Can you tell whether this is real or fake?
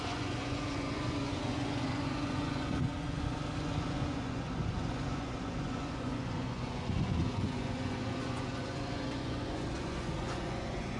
fake